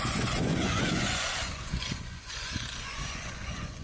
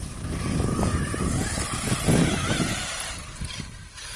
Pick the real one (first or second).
second